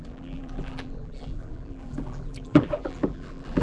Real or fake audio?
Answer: fake